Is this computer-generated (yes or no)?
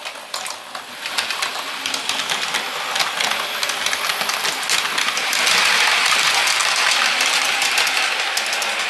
no